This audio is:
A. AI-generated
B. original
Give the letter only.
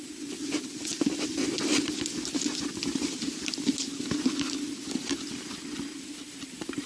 B